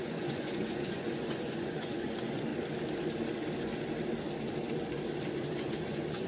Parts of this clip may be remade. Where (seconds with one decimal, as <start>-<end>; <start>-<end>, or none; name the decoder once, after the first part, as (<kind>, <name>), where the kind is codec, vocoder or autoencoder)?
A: 0.0-2.5 (vocoder, Vocos); 5.3-6.3